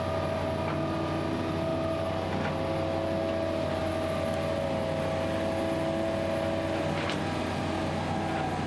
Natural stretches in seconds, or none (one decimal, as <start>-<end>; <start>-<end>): 0.0-8.7